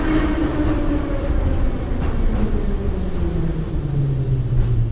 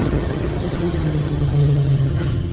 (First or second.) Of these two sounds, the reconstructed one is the second